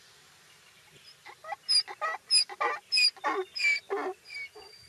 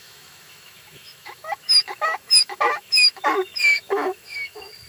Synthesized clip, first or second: second